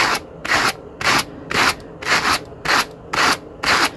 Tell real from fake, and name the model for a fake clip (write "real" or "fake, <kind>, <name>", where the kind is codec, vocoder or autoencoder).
real